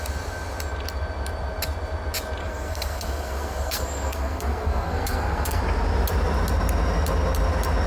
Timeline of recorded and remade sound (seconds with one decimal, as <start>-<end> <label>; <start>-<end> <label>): 0.0-2.4 recorded; 2.4-5.6 remade; 5.6-7.9 recorded